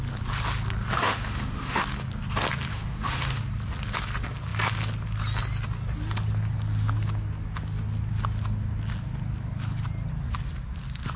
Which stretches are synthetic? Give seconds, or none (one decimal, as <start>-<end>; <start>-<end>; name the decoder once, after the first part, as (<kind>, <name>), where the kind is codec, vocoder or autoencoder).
0.9-1.8 (autoencoder, DAC-VAE); 2.7-3.4